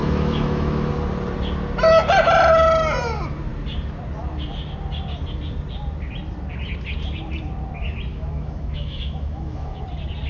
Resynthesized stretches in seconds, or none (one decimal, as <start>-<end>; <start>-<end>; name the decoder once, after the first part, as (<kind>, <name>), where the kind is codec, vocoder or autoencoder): 0.0-0.9 (autoencoder, DAC-VAE); 8.1-9.8